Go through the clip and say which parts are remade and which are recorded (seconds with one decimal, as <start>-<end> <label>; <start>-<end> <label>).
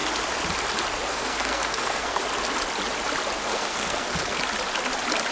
0.0-1.1 recorded; 1.1-2.2 remade; 2.2-3.5 recorded; 3.5-4.4 remade; 4.4-5.3 recorded